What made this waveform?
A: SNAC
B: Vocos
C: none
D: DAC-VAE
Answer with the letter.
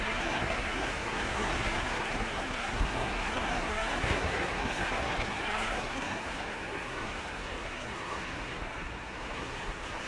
A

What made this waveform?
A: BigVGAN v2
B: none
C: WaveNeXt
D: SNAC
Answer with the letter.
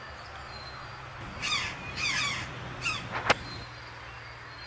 B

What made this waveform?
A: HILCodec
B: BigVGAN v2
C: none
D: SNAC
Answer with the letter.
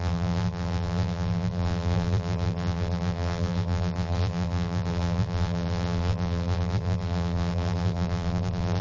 B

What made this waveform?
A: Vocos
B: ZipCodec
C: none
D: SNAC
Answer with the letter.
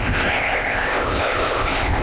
B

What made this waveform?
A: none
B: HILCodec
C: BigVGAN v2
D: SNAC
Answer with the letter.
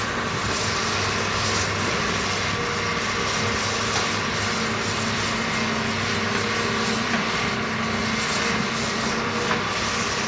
A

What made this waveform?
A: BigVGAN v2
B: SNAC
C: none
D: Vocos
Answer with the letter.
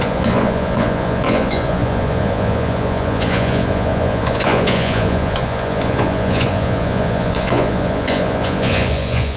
D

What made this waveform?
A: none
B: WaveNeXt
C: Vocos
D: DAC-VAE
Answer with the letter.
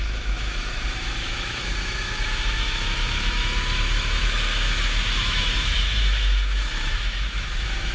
D